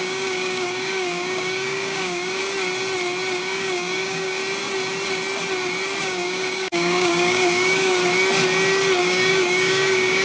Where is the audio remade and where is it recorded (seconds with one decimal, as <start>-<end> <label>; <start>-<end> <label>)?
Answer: 0.0-2.4 remade; 2.4-3.4 recorded; 3.4-4.4 remade; 4.4-6.0 recorded; 6.0-8.0 remade; 8.0-9.0 recorded; 9.0-10.2 remade